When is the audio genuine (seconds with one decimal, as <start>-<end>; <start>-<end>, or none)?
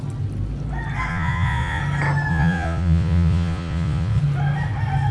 0.0-1.1; 1.8-2.3; 4.2-5.1